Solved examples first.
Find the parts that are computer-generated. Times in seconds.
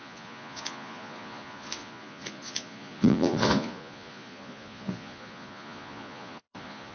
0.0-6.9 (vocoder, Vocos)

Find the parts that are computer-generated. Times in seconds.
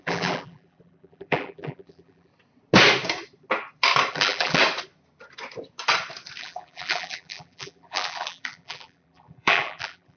0.0-2.3 (vocoder, BigVGAN v2); 4.1-4.6; 6.4-10.2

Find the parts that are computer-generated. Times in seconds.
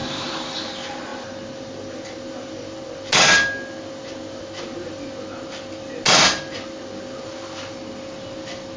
none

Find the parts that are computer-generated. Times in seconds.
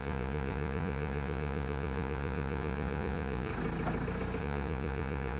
0.0-3.5 (vocoder, Vocos); 4.4-5.4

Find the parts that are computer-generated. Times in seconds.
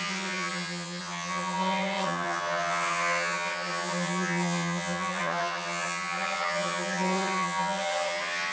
0.0-8.5 (vocoder, HiFi-GAN)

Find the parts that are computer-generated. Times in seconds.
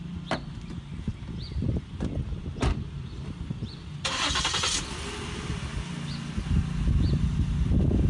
1.1-4.4 (vocoder, BigVGAN v2)